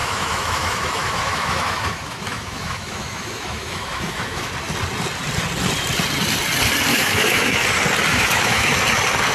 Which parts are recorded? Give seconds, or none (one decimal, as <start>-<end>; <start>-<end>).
4.5-6.9; 7.6-8.1; 8.7-9.3